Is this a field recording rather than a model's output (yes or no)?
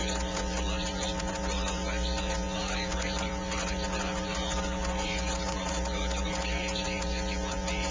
no